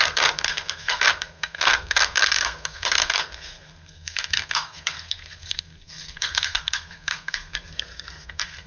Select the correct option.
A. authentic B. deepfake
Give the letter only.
B